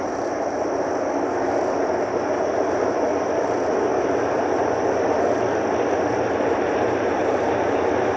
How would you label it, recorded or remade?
recorded